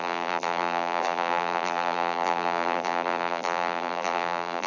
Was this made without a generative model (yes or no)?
no